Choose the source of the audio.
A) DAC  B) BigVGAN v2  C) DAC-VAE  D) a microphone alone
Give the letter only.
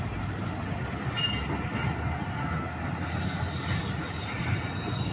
D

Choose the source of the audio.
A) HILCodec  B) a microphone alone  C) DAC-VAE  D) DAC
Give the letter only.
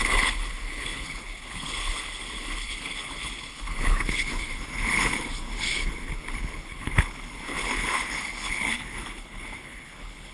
A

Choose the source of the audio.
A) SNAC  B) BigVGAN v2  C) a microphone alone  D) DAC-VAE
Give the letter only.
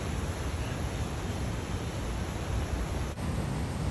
B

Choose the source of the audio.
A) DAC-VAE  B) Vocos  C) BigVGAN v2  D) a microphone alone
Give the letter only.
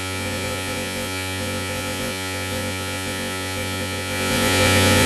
B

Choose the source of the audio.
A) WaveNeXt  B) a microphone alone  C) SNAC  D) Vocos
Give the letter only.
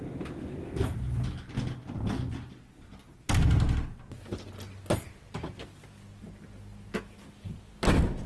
B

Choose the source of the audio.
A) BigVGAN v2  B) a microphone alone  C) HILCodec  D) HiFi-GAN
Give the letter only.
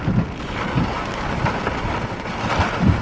B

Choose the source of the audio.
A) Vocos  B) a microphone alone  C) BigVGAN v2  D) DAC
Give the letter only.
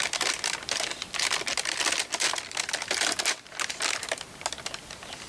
B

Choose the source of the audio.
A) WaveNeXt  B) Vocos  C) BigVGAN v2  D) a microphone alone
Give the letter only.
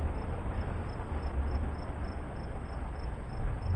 D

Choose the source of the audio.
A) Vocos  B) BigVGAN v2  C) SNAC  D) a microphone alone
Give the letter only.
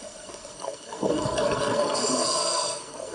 C